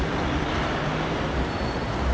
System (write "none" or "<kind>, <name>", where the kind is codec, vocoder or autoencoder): none